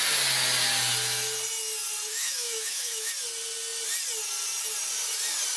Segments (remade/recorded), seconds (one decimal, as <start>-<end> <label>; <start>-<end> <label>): 0.0-2.1 recorded; 2.1-3.1 remade; 3.1-5.6 recorded